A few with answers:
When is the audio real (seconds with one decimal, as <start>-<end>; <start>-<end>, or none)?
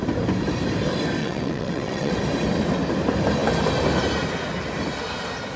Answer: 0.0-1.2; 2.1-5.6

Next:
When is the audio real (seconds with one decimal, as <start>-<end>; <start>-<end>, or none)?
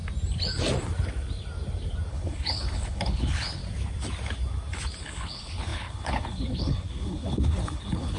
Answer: 0.0-2.1; 3.6-5.0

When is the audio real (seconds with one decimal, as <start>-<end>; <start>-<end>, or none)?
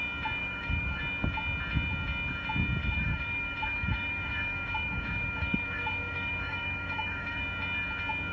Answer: 0.0-0.4; 1.0-2.8; 7.4-8.3